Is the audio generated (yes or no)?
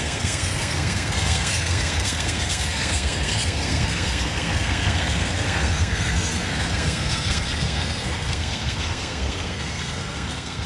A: yes